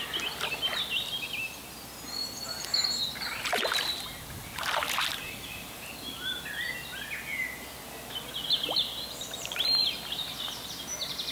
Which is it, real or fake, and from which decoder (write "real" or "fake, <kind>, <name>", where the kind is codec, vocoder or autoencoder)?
real